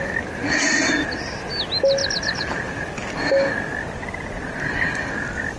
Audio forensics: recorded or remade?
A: recorded